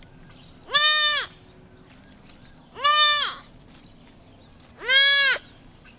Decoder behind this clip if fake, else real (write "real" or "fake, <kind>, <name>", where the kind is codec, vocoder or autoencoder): real